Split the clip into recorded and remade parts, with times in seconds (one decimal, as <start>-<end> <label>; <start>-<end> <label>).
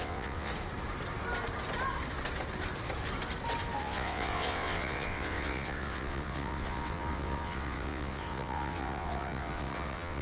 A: 0.0-0.5 remade; 0.5-3.8 recorded; 3.8-10.2 remade